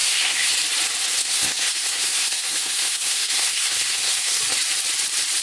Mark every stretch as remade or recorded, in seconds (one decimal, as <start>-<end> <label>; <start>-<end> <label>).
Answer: 0.0-0.5 remade; 0.5-1.2 recorded; 1.2-4.4 remade; 4.4-5.4 recorded